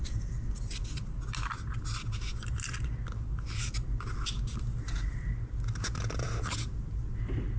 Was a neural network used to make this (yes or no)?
no